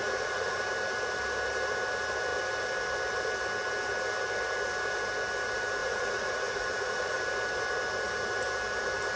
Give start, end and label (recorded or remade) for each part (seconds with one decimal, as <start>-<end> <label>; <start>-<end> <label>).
0.0-0.6 remade; 0.6-5.8 recorded; 5.8-7.2 remade; 7.2-9.2 recorded